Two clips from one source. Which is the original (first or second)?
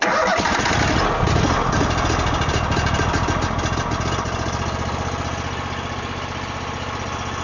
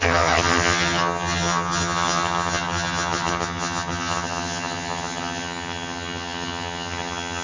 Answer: first